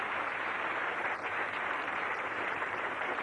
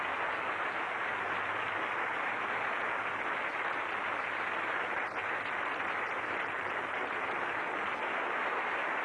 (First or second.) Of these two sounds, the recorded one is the second